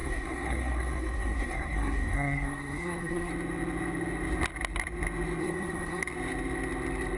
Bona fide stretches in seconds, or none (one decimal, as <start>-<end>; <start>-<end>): 3.3-5.4; 6.0-7.2